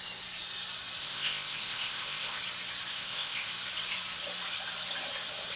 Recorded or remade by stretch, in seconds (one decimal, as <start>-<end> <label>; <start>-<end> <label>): 0.0-1.0 recorded; 1.0-2.4 remade; 2.4-2.9 recorded; 2.9-3.5 remade; 3.5-5.6 recorded